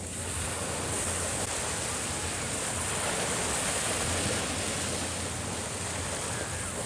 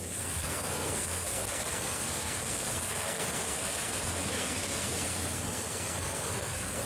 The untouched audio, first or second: first